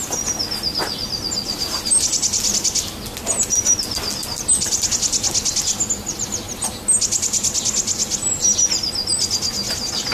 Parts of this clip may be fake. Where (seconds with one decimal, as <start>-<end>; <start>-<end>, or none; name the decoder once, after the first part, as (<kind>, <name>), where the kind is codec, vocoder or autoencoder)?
none